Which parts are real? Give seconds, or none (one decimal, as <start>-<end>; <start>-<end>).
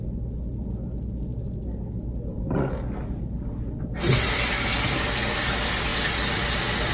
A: 0.0-6.9